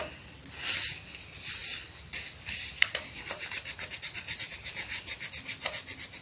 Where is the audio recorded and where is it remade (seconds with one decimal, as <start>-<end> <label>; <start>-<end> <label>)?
0.0-6.2 recorded